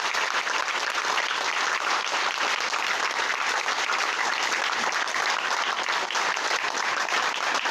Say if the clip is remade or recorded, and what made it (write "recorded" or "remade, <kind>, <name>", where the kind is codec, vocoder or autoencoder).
recorded